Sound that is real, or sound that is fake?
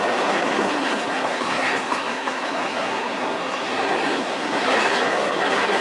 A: fake